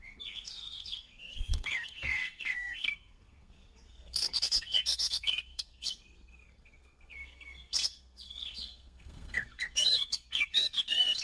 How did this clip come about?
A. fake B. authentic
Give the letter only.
A